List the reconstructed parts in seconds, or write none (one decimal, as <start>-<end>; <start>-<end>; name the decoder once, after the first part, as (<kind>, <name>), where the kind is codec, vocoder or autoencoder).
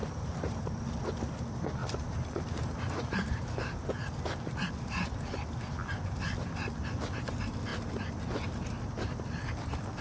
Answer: 0.0-0.8 (vocoder, BigVGAN v2); 1.8-3.9